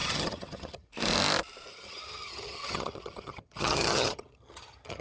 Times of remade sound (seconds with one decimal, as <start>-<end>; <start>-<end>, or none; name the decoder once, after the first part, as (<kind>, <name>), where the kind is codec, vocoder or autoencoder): 0.0-0.9 (vocoder, HiFi-GAN); 1.7-5.0